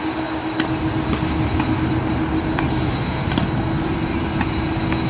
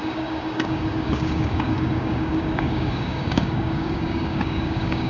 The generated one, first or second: second